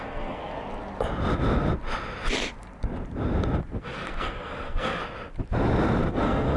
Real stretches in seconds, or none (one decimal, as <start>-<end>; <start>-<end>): 0.5-3.8; 5.0-6.1